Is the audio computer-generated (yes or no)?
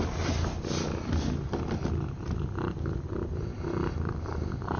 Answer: no